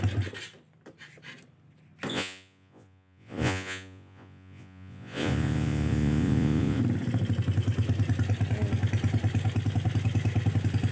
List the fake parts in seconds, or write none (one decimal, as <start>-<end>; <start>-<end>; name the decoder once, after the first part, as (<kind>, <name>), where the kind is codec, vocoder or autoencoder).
2.1-6.8 (vocoder, Vocos)